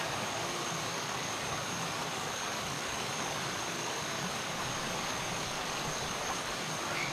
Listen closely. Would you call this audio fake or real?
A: fake